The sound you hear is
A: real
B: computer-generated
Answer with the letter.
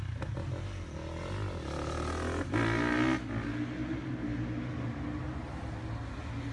A